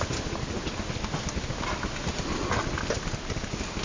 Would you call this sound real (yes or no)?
yes